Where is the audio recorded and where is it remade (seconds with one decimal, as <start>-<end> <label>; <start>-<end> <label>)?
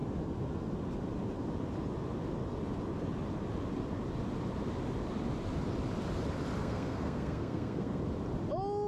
0.0-6.6 recorded; 6.6-8.0 remade; 8.0-8.9 recorded